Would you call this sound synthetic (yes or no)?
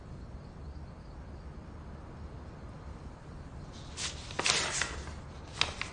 no